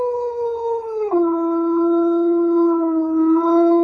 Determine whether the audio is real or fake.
fake